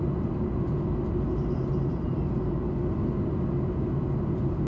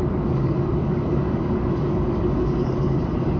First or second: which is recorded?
first